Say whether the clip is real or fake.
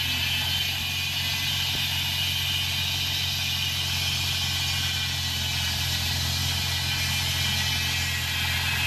real